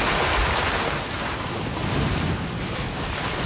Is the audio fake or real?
real